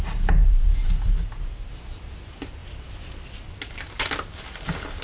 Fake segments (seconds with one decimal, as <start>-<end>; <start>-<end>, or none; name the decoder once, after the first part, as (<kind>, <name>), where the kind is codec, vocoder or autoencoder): 0.4-1.7 (vocoder, BigVGAN v2)